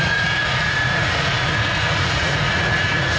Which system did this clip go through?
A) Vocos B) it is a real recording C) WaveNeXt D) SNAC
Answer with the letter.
A